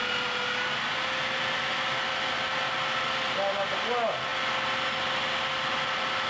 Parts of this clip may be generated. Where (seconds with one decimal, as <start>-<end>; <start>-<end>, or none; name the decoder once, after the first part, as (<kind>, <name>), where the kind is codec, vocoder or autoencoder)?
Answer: none